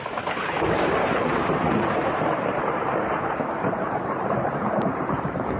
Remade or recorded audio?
remade